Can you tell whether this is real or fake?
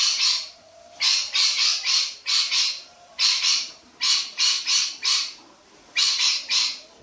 fake